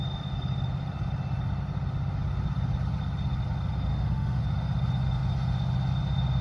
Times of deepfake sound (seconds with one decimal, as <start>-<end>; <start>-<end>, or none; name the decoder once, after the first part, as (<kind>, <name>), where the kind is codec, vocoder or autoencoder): 3.9-4.4 (autoencoder, DAC-VAE)